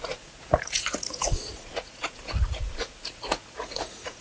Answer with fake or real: fake